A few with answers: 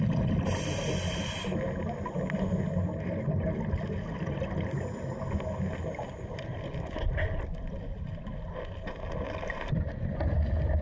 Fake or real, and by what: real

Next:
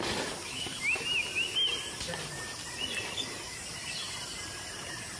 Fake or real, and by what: real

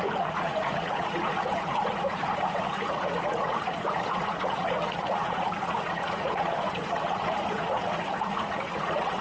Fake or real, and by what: fake, vocoder, Vocos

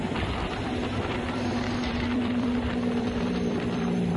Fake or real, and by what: fake, vocoder, BigVGAN v2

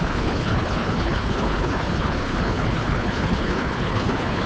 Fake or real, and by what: fake, codec, HILCodec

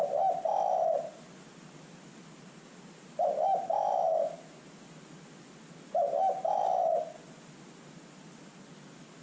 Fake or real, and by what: real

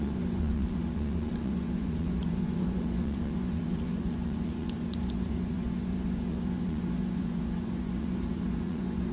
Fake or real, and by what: fake, vocoder, Vocos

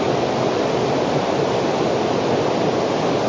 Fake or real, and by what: real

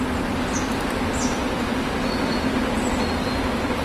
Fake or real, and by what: real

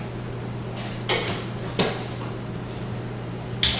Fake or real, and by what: real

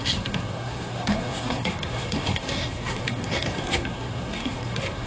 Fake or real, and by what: fake, codec, SNAC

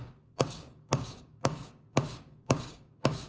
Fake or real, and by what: fake, codec, DAC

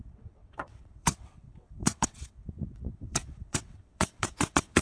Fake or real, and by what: fake, vocoder, WaveNeXt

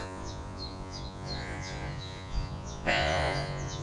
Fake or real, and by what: fake, vocoder, Vocos